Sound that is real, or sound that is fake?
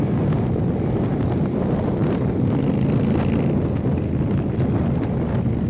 real